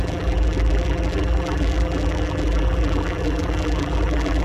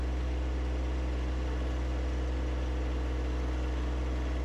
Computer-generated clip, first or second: first